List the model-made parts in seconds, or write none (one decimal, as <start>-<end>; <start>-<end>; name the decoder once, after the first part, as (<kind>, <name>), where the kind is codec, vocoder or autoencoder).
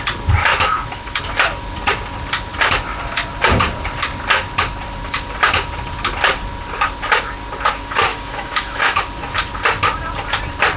0.5-1.2 (autoencoder, DAC-VAE); 8.1-9.0